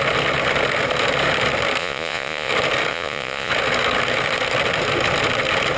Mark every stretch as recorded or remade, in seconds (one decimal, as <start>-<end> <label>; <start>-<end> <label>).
0.0-1.8 recorded; 1.8-2.5 remade; 2.5-2.9 recorded; 2.9-3.5 remade; 3.5-5.8 recorded

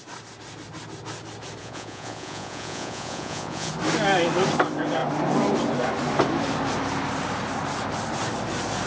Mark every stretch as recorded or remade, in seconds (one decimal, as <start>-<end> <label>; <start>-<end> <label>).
0.0-1.6 recorded; 1.6-3.7 remade; 3.7-8.9 recorded

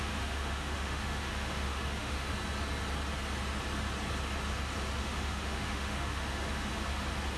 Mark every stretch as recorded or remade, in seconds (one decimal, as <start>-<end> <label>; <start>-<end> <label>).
0.0-2.3 remade; 2.3-5.0 recorded; 5.0-6.7 remade; 6.7-7.4 recorded

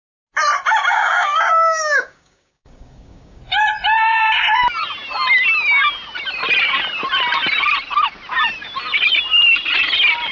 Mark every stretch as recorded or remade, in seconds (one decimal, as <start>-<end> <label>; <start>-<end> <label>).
0.0-0.9 recorded; 0.9-3.4 remade; 3.4-10.3 recorded